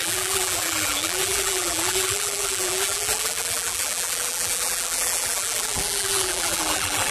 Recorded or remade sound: remade